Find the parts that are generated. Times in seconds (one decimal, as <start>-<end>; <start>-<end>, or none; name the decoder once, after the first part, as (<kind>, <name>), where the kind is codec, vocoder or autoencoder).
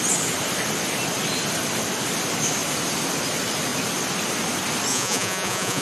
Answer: 4.9-5.8 (vocoder, Vocos)